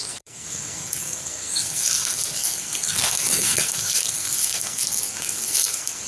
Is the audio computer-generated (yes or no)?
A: yes